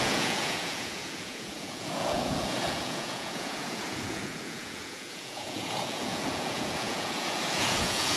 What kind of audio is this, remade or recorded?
remade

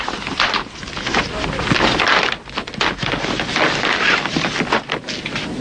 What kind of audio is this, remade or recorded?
recorded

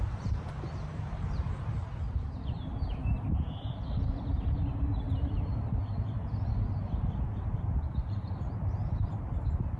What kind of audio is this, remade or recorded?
remade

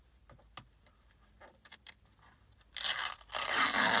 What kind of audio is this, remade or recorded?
remade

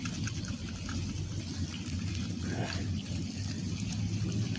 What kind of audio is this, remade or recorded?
recorded